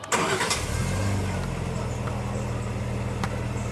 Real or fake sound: real